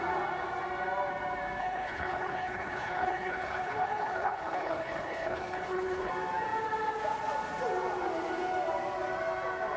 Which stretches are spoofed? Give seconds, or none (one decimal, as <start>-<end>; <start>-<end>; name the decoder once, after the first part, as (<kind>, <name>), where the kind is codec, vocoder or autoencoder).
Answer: 1.6-6.1 (codec, HILCodec)